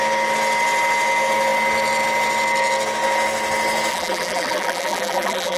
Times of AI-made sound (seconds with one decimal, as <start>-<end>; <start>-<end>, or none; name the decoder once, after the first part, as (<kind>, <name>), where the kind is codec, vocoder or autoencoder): 3.9-5.6 (vocoder, BigVGAN v2)